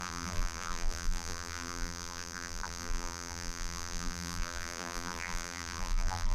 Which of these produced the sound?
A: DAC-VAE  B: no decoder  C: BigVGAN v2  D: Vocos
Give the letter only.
C